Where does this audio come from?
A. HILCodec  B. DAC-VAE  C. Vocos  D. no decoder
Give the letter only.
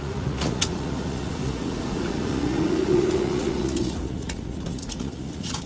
C